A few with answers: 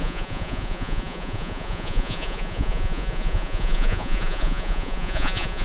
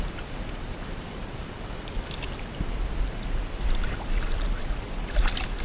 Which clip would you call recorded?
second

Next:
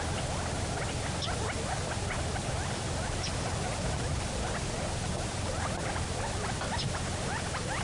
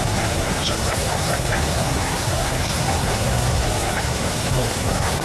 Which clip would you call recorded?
first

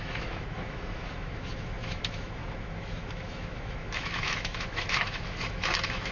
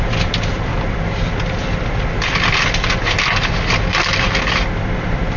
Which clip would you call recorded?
second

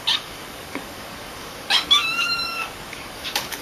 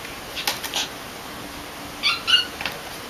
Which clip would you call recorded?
second